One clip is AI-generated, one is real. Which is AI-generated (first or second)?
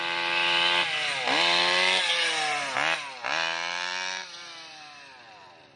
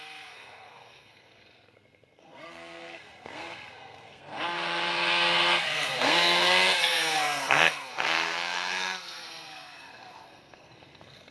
second